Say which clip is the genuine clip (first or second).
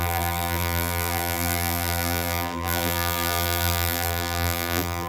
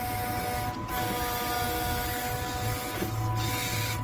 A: second